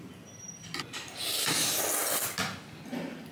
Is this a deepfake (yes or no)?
no